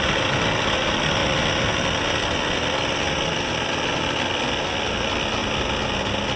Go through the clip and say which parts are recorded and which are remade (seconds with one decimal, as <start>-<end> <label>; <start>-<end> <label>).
0.0-6.4 recorded

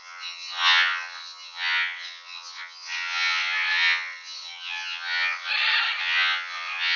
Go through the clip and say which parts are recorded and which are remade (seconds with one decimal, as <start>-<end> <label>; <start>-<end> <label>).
0.0-5.5 remade; 5.5-6.0 recorded; 6.0-7.0 remade

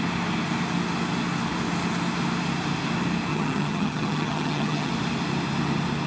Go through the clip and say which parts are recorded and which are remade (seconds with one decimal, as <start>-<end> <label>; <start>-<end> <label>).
0.0-3.3 recorded; 3.3-4.9 remade; 4.9-6.1 recorded

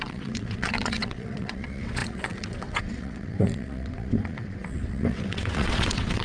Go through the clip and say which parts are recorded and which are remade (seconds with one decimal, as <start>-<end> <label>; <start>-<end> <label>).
0.0-6.2 remade

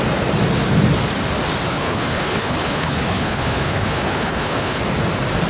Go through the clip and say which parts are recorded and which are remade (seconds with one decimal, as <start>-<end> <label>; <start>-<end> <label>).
0.0-1.7 recorded; 1.7-4.8 remade; 4.8-5.5 recorded